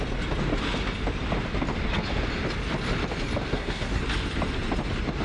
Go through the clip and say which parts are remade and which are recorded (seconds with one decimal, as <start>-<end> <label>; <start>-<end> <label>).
0.0-3.5 recorded; 3.5-4.0 remade; 4.0-5.2 recorded